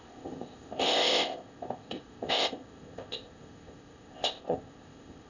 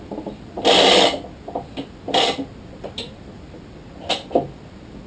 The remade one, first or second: first